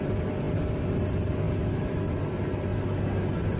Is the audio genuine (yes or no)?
yes